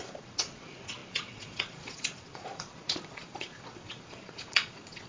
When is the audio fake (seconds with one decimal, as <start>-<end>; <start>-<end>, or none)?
0.0-5.1